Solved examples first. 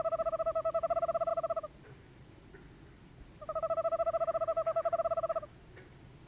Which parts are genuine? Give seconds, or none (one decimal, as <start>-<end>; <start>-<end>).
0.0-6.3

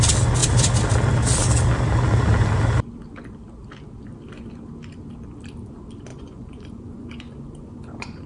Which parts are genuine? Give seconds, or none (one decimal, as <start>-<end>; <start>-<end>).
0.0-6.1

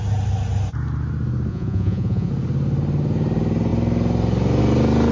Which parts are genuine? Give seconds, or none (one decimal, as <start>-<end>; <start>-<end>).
0.0-1.5; 2.3-5.1

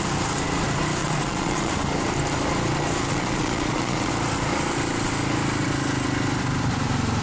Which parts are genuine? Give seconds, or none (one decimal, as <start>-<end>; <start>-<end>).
0.0-1.0; 1.7-3.1; 4.1-7.2